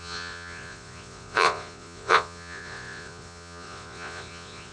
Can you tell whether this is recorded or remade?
remade